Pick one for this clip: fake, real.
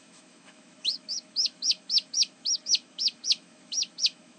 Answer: fake